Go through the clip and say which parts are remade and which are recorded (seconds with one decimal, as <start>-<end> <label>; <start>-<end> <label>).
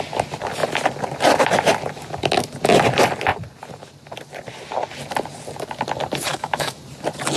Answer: 0.0-6.3 recorded; 6.3-6.8 remade; 6.8-7.4 recorded